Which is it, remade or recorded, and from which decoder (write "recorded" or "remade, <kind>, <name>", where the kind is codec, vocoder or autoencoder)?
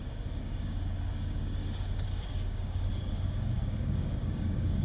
remade, codec, DAC